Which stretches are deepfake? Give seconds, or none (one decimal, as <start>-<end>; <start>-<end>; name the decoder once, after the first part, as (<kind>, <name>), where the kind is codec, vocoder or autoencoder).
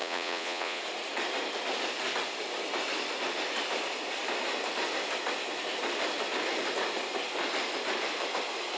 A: 0.0-0.8 (vocoder, Vocos)